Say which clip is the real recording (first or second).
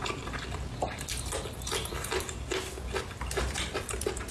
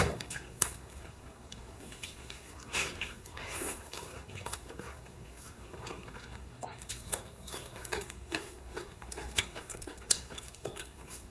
first